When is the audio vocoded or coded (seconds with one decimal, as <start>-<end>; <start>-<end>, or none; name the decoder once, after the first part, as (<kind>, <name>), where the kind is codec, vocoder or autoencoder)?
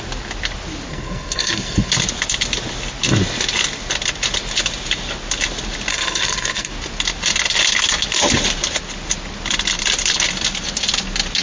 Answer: 0.9-1.9 (codec, SNAC); 5.9-6.7